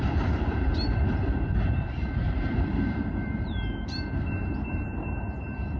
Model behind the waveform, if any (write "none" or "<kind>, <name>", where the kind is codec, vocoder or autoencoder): vocoder, BigVGAN v2